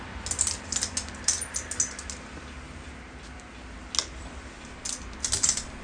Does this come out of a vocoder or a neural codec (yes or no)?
no